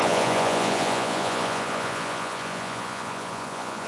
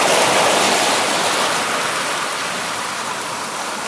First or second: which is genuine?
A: second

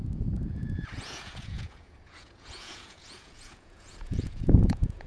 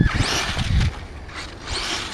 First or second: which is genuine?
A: second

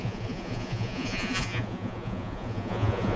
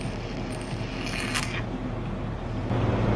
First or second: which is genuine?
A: second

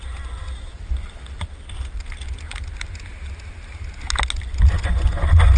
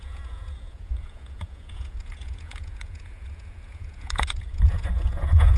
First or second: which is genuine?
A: first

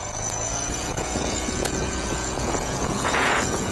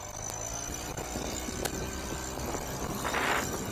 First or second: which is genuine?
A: second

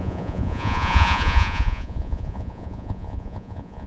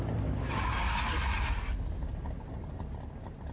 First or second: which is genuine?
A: second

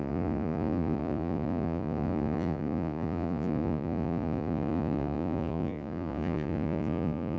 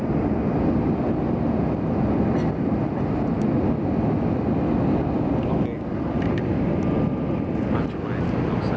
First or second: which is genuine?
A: second